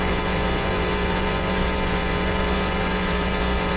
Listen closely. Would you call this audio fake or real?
fake